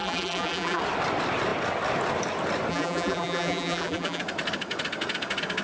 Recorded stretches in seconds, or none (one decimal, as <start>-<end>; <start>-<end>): 0.8-2.7; 4.2-5.6